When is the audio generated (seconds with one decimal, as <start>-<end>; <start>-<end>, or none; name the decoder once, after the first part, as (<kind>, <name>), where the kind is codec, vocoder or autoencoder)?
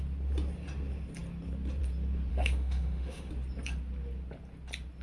2.3-3.3 (autoencoder, DAC-VAE)